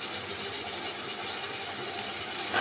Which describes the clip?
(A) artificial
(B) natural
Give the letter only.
B